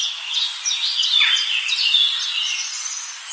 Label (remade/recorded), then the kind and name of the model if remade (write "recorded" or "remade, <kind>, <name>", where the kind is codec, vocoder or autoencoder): recorded